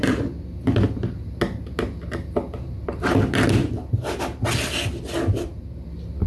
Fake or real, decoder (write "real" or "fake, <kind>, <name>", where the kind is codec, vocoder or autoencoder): real